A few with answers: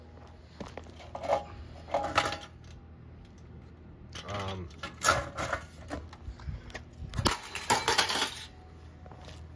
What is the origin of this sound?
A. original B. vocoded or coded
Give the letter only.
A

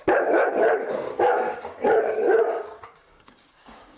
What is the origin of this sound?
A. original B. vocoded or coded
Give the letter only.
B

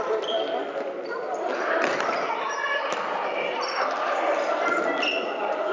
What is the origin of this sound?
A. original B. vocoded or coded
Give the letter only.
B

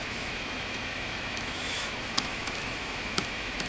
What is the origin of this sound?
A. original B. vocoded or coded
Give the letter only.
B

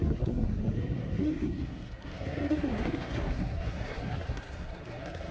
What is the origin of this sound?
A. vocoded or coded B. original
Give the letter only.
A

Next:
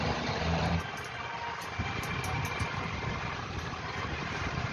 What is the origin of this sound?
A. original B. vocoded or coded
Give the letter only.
B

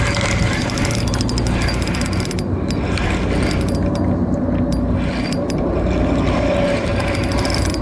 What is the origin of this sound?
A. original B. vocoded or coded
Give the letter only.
A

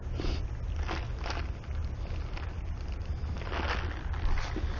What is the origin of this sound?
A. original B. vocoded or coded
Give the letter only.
A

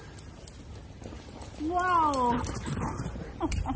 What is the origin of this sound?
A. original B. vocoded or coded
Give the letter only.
A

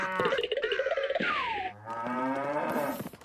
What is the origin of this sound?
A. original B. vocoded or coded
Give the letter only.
B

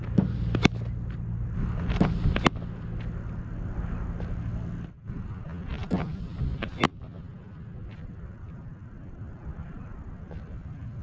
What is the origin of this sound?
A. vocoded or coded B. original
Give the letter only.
B